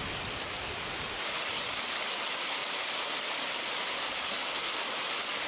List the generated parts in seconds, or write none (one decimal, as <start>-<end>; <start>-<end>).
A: none